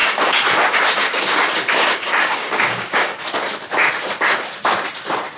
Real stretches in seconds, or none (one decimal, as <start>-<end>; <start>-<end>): 3.2-5.4